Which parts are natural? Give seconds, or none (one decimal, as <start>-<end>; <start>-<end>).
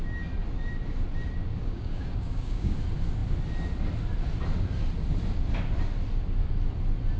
0.0-1.6; 2.7-7.2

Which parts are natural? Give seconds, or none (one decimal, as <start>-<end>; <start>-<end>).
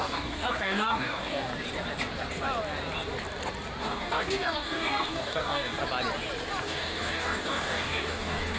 1.5-3.8; 5.8-6.6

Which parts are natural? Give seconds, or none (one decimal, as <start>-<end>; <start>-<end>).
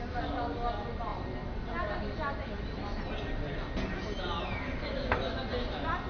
0.0-6.1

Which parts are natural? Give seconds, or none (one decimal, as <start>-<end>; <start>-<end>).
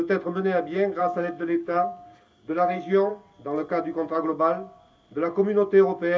0.0-1.0; 3.1-6.2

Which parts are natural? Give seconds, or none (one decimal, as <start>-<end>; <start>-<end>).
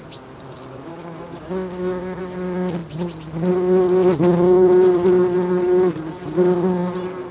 0.0-0.9; 2.2-7.3